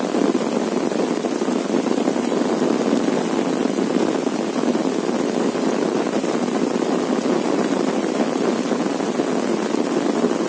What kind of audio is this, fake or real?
real